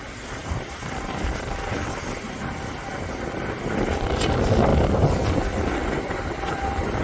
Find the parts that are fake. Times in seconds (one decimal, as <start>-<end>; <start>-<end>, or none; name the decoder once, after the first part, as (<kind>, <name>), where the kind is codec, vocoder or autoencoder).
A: 0.0-4.7 (vocoder, BigVGAN v2); 5.8-7.0